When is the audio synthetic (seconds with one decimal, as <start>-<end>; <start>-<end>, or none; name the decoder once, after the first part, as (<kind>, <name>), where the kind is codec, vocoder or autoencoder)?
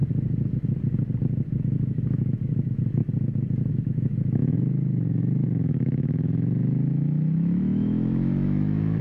1.6-3.0 (autoencoder, DAC-VAE); 3.7-9.0